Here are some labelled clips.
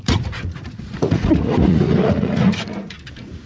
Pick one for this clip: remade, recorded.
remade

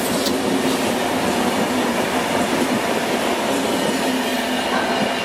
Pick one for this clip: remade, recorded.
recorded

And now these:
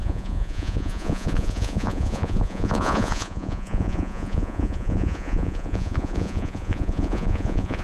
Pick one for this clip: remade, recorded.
remade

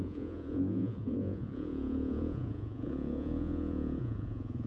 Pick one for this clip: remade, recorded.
remade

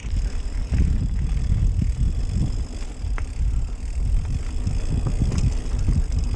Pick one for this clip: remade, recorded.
recorded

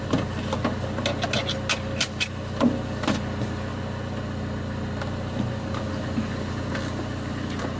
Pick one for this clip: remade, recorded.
recorded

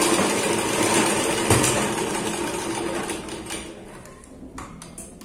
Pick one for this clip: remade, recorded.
recorded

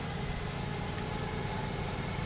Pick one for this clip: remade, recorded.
recorded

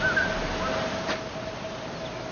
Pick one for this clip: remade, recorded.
recorded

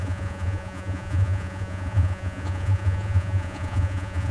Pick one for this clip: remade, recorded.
remade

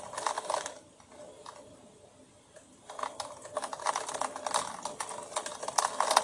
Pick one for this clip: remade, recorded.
recorded